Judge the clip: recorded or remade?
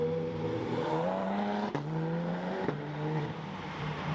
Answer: remade